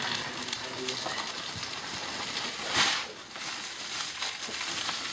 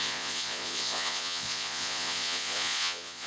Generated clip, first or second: second